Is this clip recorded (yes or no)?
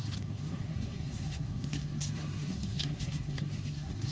no